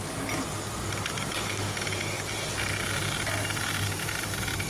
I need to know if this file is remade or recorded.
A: recorded